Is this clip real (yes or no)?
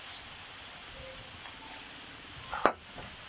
yes